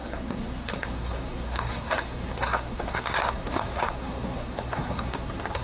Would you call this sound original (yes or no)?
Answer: no